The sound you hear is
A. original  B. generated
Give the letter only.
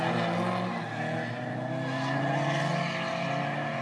A